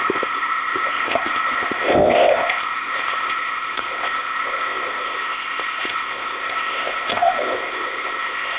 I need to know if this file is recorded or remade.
remade